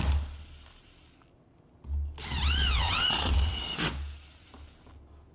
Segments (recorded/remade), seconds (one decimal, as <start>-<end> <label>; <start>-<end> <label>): 0.0-2.6 recorded; 2.6-3.9 remade; 3.9-5.3 recorded